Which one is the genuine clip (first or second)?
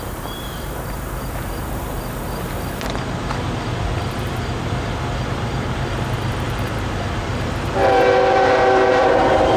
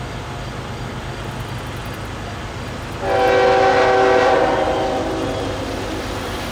second